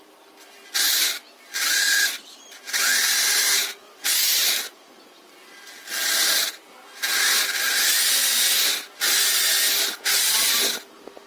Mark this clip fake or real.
real